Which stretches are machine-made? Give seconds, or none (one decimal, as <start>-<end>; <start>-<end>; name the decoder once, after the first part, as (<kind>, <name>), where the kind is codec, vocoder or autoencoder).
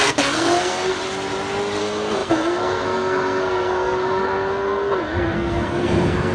0.0-1.0 (codec, SNAC); 1.8-6.3